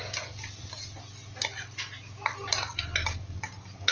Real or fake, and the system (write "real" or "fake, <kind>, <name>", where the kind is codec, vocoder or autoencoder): real